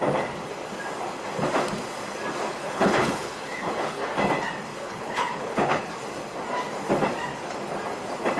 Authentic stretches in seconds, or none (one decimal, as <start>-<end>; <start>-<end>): 0.0-2.5; 4.1-4.7; 5.9-8.4